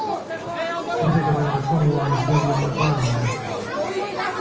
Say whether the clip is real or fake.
real